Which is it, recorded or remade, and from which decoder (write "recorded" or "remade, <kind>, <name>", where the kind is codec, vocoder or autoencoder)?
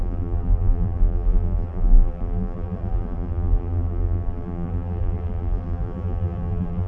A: remade, vocoder, BigVGAN v2